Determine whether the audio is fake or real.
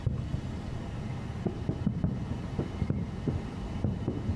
real